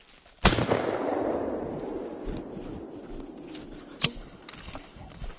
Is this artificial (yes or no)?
no